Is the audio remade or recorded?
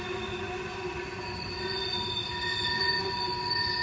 recorded